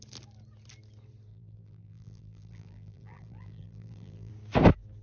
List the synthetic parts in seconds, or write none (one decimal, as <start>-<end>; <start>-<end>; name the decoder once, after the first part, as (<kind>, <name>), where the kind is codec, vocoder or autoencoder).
1.3-4.3 (vocoder, BigVGAN v2)